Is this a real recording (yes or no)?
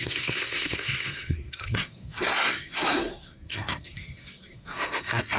no